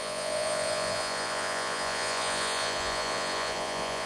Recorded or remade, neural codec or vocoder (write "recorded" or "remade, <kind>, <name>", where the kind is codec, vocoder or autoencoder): remade, vocoder, Vocos